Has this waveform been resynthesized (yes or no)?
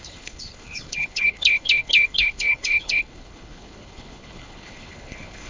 yes